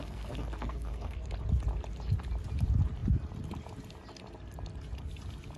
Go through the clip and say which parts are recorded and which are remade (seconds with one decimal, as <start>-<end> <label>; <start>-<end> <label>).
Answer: 0.0-1.3 remade; 1.3-5.6 recorded